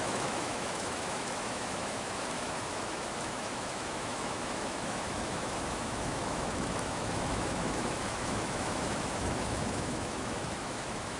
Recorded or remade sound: remade